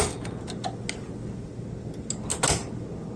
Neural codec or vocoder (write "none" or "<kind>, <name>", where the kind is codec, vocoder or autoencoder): none